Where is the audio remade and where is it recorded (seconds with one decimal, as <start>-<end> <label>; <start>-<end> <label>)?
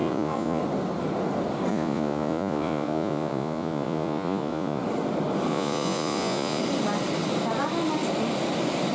0.0-0.6 remade; 0.6-1.7 recorded; 1.7-4.8 remade; 4.8-5.5 recorded; 5.5-6.6 remade; 6.6-8.9 recorded